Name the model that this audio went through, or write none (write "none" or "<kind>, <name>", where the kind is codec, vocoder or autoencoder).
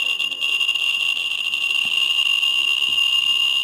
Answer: none